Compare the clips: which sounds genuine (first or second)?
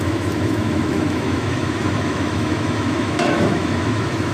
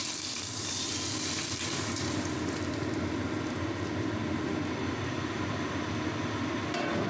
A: second